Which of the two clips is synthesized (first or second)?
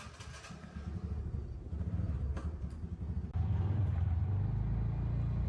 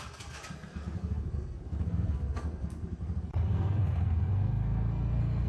second